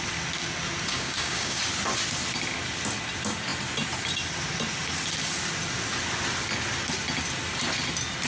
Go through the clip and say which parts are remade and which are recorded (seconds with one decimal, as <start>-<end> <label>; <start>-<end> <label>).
0.0-0.9 recorded; 0.9-1.6 remade; 1.6-8.3 recorded